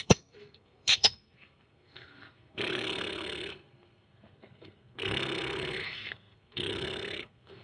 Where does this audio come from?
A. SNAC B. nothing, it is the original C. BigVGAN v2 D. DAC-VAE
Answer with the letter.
A